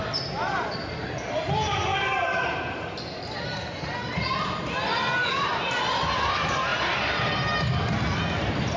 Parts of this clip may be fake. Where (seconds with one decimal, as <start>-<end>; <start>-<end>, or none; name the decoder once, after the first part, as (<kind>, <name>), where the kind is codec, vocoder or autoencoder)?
none